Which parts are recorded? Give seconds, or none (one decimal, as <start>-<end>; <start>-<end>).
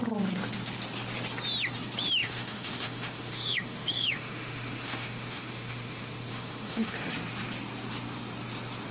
0.0-2.2; 7.1-8.9